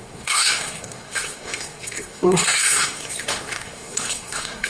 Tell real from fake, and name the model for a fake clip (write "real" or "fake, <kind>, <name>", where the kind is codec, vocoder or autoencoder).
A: fake, codec, SNAC